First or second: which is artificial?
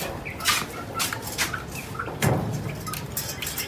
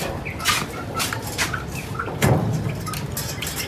second